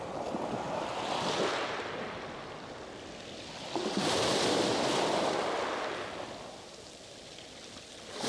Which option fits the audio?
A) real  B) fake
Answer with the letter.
A